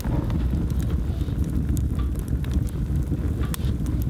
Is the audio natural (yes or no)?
yes